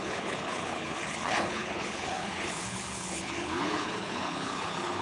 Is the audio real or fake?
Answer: fake